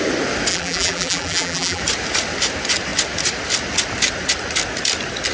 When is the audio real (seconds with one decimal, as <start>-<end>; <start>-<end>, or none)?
0.0-0.5; 1.8-5.3